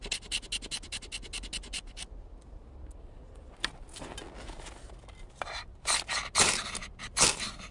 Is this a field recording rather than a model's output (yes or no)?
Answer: yes